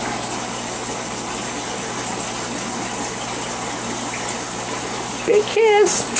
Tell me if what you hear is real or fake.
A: real